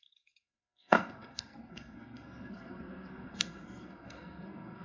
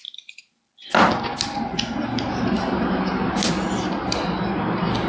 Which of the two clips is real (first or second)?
second